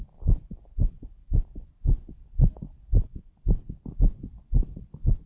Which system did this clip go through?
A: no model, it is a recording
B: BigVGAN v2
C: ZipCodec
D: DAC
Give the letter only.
A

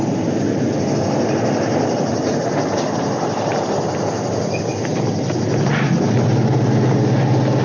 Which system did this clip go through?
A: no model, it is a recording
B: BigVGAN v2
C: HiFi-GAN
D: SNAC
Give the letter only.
A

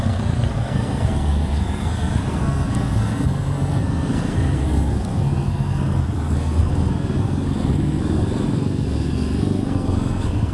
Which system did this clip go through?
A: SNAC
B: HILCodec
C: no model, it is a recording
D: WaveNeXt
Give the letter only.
A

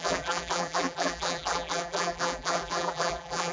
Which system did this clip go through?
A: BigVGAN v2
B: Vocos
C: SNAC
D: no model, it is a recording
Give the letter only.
A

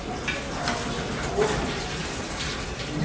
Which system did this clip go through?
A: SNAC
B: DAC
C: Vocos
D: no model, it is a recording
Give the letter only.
D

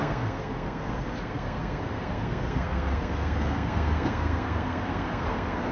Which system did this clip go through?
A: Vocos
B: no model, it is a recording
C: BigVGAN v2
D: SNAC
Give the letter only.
D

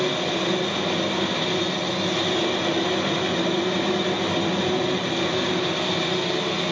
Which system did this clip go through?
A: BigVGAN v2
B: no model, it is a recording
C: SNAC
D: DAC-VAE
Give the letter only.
B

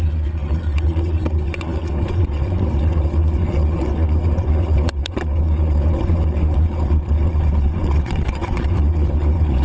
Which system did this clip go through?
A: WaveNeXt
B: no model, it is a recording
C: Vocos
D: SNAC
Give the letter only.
A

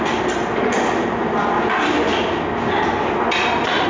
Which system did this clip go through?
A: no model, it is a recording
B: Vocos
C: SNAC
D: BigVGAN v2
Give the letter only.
A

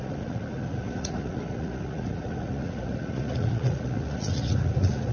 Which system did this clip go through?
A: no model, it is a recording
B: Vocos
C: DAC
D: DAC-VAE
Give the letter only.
B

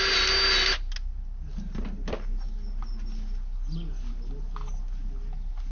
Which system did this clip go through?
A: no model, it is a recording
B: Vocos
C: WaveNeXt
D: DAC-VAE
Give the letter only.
A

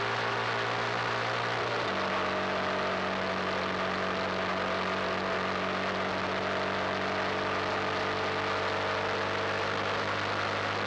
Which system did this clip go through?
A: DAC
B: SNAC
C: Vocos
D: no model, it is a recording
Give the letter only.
D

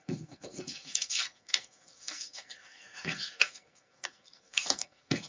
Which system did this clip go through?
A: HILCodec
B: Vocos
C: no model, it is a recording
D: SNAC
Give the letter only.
D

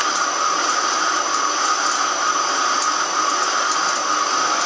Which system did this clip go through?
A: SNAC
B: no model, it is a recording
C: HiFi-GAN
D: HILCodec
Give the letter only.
B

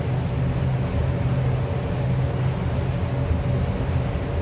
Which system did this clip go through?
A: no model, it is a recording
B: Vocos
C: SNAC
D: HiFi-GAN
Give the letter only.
A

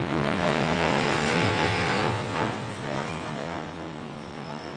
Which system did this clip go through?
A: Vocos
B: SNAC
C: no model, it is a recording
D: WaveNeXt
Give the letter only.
D